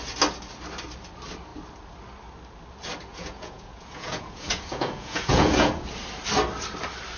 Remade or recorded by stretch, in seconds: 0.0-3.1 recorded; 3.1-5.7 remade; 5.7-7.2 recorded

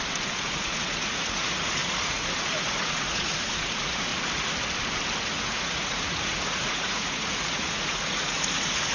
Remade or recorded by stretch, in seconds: 0.0-4.1 remade; 4.1-5.2 recorded; 5.2-8.9 remade

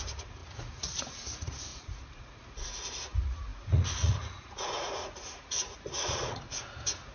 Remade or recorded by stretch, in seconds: 0.0-7.1 remade

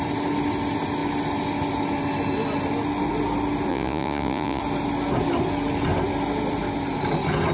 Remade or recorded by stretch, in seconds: 0.0-3.7 recorded; 3.7-4.6 remade; 4.6-7.5 recorded

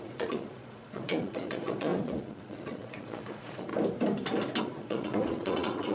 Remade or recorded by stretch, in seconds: 0.0-3.7 remade; 3.7-4.6 recorded; 4.6-5.9 remade

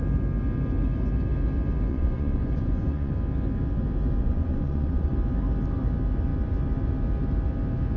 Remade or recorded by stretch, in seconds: 0.0-1.9 recorded; 1.9-3.1 remade; 3.1-4.2 recorded; 4.2-5.1 remade; 5.1-8.0 recorded

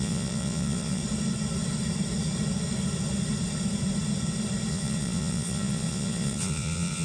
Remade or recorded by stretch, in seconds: 0.0-1.0 remade; 1.0-4.7 recorded; 4.7-7.0 remade